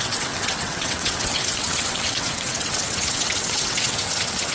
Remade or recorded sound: remade